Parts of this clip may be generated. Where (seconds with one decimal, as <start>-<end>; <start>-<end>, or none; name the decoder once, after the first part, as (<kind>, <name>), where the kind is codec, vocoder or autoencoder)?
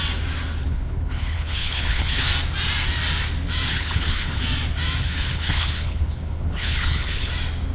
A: 0.6-2.3 (codec, HILCodec); 3.7-4.4; 5.0-7.3